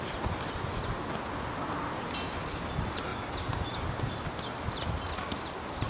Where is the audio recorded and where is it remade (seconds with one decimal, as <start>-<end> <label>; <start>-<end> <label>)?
0.0-5.9 recorded